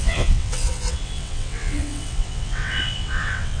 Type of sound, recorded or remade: remade